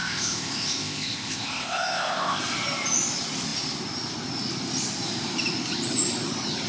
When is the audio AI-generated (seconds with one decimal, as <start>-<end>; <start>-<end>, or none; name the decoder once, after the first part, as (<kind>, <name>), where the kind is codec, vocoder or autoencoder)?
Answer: 0.0-2.4 (codec, ZipCodec)